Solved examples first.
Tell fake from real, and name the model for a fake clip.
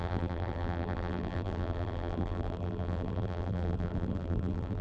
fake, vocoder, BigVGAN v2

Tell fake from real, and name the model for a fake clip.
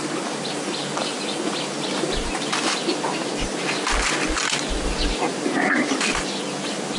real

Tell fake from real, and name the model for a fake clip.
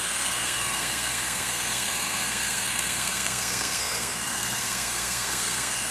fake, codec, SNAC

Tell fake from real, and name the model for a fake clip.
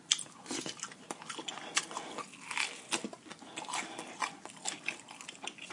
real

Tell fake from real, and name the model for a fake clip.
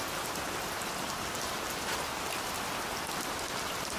real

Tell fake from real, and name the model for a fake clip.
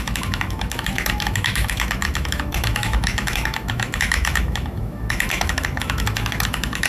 fake, autoencoder, DAC-VAE